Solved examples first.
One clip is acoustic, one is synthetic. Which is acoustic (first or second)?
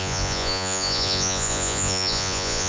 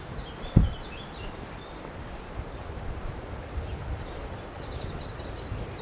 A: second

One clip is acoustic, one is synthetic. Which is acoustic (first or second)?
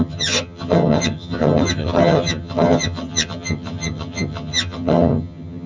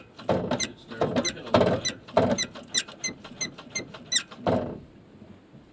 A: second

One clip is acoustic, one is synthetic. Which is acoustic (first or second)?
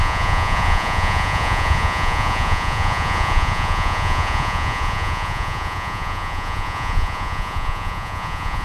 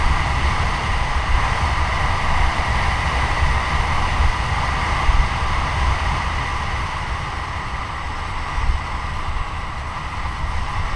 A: second